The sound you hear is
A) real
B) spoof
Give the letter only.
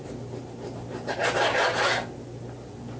A